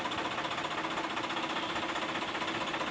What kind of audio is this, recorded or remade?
recorded